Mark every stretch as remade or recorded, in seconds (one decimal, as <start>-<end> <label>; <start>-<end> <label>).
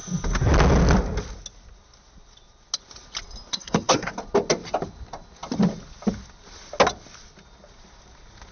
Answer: 0.0-3.5 recorded; 3.5-4.1 remade; 4.1-8.5 recorded